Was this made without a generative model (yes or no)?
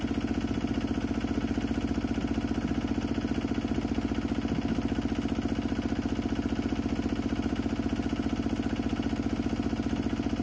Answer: yes